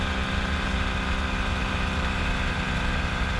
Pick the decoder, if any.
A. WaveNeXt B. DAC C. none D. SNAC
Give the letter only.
C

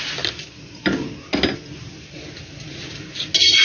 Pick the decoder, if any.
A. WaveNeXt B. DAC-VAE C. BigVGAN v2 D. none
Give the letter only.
D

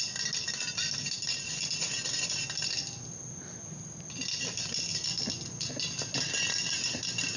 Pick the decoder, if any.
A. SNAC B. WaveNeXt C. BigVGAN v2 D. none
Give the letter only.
D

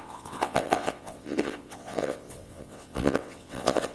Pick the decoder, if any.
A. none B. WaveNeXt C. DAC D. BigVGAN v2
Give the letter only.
B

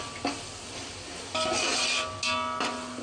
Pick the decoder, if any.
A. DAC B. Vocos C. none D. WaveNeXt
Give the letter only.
C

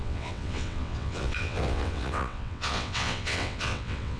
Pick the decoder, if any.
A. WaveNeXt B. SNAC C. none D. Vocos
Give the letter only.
A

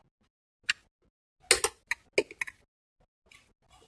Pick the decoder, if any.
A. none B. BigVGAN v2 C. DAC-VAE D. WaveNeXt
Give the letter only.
A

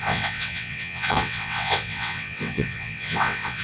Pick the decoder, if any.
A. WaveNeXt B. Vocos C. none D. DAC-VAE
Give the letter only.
A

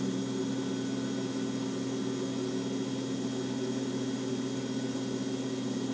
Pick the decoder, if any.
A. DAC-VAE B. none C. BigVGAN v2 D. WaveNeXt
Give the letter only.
B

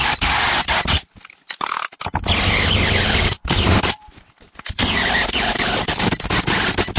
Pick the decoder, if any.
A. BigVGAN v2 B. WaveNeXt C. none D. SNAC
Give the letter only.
C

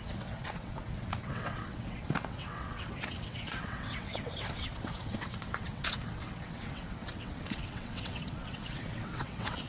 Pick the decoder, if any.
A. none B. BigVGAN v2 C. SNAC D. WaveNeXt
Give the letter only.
D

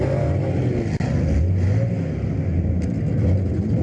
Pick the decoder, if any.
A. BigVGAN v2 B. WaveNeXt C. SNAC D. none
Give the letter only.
D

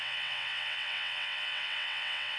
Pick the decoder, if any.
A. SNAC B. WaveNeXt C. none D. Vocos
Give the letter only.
B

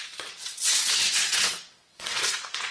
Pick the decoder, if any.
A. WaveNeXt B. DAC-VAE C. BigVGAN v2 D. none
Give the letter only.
A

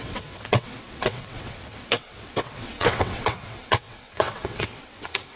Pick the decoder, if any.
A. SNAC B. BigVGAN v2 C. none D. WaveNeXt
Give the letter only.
D